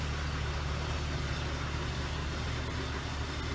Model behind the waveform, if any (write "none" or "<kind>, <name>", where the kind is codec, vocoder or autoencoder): none